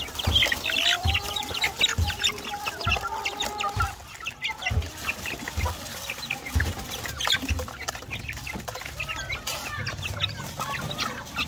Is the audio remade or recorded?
recorded